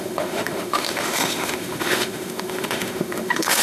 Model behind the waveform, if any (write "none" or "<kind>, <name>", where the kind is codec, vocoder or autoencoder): autoencoder, DAC-VAE